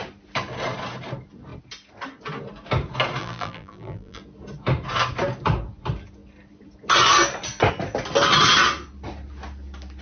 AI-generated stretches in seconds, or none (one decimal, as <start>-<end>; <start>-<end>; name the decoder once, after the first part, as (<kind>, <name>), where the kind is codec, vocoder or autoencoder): 3.2-4.2 (vocoder, BigVGAN v2)